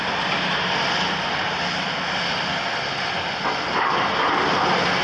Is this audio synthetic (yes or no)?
no